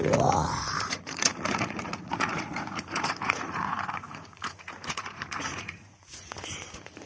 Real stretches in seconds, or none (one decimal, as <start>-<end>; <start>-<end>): none